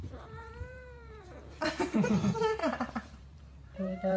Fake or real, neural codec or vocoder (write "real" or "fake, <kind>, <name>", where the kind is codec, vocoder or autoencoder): fake, vocoder, BigVGAN v2